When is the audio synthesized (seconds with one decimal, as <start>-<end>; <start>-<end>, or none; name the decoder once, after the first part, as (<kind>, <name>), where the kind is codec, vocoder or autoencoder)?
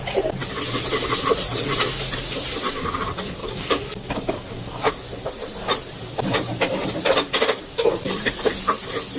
3.4-4.9 (codec, DAC)